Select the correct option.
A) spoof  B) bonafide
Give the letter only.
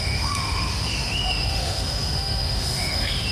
A